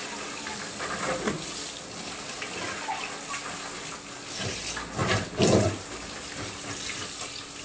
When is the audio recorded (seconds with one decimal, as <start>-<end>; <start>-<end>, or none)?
0.0-7.6